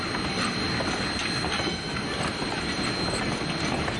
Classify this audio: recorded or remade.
recorded